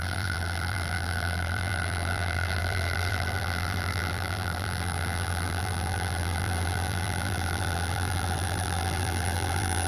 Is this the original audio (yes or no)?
no